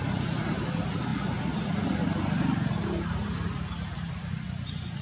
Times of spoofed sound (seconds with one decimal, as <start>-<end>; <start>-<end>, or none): none